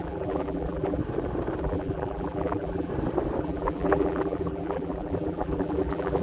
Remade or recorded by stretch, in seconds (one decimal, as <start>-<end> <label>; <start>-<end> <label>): 0.0-1.0 remade; 1.0-1.6 recorded; 1.6-2.9 remade; 2.9-3.4 recorded; 3.4-6.2 remade